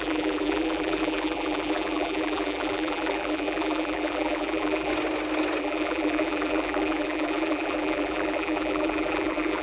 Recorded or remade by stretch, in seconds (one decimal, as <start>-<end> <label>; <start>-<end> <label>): 0.0-4.9 remade; 4.9-5.6 recorded; 5.6-9.6 remade